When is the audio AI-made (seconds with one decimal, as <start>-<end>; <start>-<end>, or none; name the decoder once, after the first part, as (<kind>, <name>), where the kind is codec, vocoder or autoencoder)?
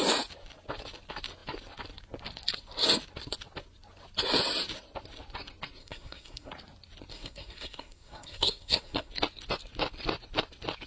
5.8-6.5 (codec, SNAC); 7.1-9.1